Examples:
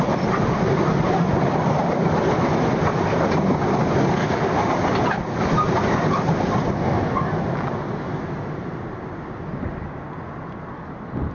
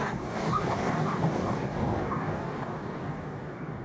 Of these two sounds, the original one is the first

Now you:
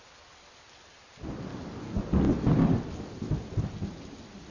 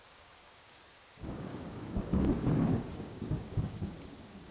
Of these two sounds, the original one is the first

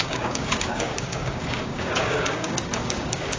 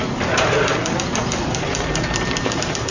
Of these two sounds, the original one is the second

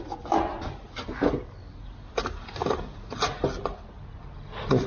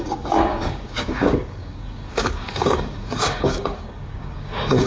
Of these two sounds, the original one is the first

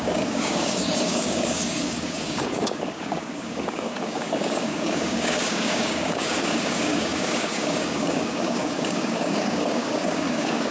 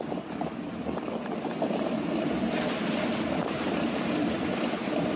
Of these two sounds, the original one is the second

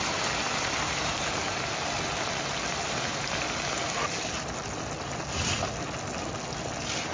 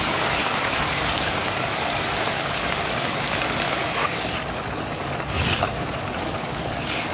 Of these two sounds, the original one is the first